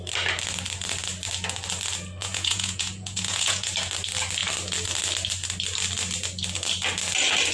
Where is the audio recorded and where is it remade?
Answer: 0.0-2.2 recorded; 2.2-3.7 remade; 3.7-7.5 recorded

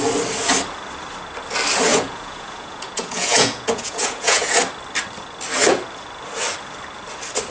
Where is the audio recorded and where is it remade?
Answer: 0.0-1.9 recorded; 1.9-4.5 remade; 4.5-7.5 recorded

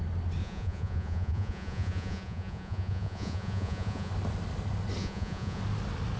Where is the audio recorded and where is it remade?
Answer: 0.0-0.4 recorded; 0.4-4.1 remade; 4.1-5.0 recorded; 5.0-5.6 remade; 5.6-6.2 recorded

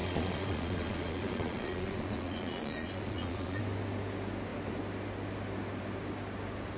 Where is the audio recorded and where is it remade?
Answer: 0.0-3.6 remade; 3.6-6.8 recorded